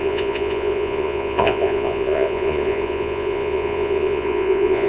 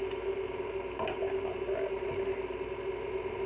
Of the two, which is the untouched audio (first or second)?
second